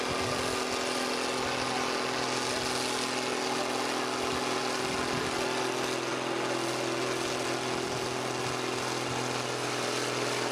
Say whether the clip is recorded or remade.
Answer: recorded